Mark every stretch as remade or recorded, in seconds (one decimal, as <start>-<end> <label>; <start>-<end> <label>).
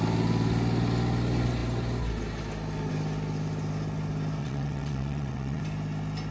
0.0-4.4 recorded; 4.4-5.6 remade; 5.6-6.3 recorded